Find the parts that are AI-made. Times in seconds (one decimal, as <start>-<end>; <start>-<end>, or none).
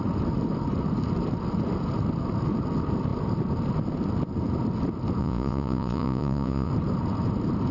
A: 5.2-6.7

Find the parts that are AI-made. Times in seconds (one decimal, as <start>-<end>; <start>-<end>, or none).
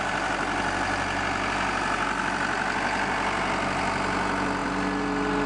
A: none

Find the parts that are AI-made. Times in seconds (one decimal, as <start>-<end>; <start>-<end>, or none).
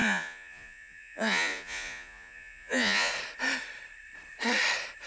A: 0.0-3.1